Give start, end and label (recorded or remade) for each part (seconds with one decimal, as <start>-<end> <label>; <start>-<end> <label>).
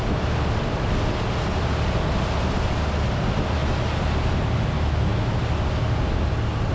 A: 0.0-6.7 recorded